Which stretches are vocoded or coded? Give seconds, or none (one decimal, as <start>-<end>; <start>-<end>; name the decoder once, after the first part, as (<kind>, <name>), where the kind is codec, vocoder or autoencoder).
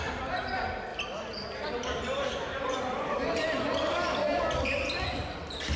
0.9-4.4 (vocoder, BigVGAN v2)